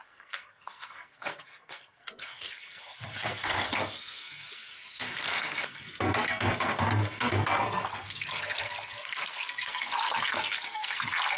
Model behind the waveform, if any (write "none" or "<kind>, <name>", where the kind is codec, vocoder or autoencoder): codec, SNAC